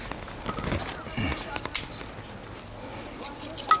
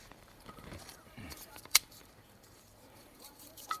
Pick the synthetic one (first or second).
second